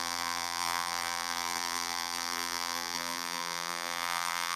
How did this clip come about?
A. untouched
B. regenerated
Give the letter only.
B